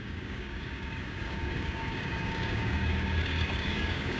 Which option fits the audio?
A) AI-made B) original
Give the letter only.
A